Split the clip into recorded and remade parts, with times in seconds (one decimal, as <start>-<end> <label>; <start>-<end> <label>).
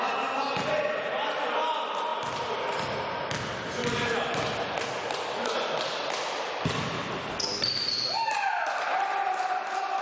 0.0-10.0 recorded